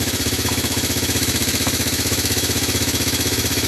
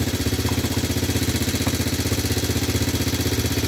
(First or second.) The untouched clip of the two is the second